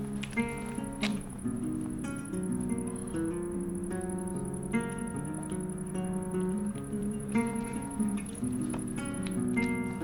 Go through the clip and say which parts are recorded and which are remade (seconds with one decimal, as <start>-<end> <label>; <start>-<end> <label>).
0.0-1.1 recorded; 1.1-1.6 remade; 1.6-7.0 recorded; 7.0-9.4 remade; 9.4-10.0 recorded